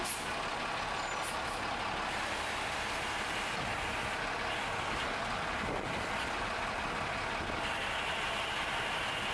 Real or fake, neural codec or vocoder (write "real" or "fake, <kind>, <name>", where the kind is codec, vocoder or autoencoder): real